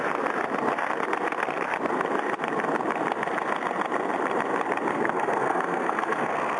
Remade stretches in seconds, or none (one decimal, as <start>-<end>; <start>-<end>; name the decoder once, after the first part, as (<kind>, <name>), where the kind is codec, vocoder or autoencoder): 4.9-6.6 (codec, SNAC)